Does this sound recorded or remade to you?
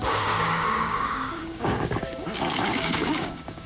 remade